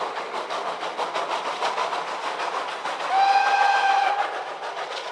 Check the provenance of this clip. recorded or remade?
recorded